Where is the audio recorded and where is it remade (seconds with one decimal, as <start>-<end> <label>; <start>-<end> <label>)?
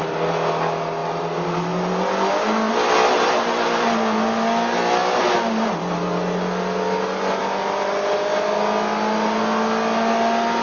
0.0-10.6 recorded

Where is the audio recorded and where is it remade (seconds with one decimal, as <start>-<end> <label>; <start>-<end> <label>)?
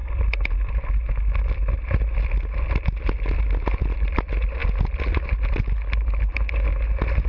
0.0-7.3 recorded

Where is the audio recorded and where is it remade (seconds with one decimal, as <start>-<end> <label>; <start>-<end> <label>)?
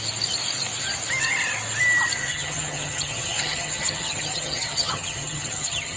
0.0-2.3 recorded; 2.3-6.0 remade